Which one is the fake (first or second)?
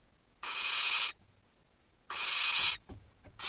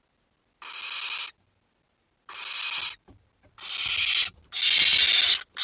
first